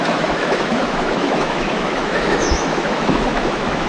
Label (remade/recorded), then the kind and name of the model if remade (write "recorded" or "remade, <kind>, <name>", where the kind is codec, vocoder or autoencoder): remade, autoencoder, DAC-VAE